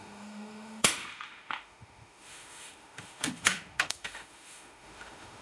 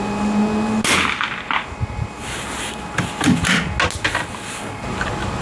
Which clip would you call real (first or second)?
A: second